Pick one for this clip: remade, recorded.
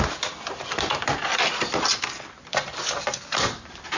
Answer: remade